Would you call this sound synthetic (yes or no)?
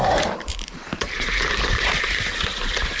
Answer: yes